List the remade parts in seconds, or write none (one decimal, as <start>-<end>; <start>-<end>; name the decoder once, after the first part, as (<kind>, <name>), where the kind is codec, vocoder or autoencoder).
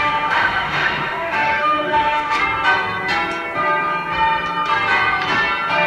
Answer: 0.0-2.4 (autoencoder, DAC-VAE)